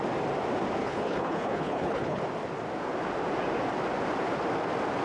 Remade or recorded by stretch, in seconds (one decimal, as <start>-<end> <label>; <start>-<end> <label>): 0.0-0.8 recorded; 0.8-2.2 remade; 2.2-5.0 recorded